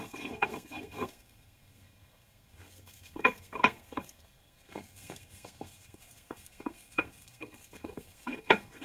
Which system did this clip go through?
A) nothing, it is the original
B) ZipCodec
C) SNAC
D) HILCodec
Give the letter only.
C